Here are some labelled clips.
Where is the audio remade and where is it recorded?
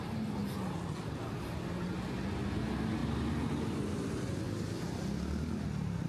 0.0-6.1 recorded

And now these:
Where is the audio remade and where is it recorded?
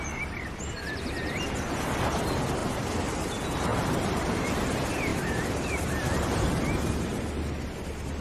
0.0-2.6 recorded; 2.6-3.3 remade; 3.3-3.7 recorded; 3.7-4.6 remade; 4.6-5.1 recorded; 5.1-6.4 remade; 6.4-8.2 recorded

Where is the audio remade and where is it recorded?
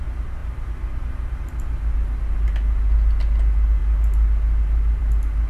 0.0-5.5 recorded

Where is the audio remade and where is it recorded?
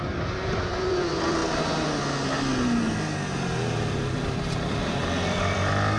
0.0-1.4 remade; 1.4-4.3 recorded; 4.3-6.0 remade